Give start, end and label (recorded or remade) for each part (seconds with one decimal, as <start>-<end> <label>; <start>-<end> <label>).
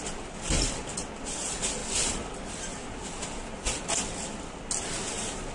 0.0-5.5 recorded